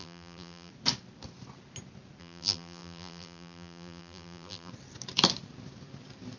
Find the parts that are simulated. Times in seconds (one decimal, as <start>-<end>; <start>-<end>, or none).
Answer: 0.0-0.7; 2.2-4.7